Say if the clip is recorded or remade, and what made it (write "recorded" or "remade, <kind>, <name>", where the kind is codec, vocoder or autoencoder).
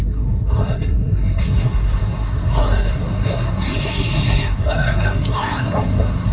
remade, codec, SNAC